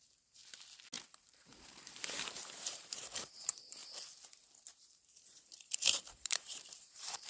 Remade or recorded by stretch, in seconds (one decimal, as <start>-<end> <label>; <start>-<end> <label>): 0.0-0.4 remade; 0.4-1.1 recorded; 1.1-3.8 remade; 3.8-4.7 recorded; 4.7-7.3 remade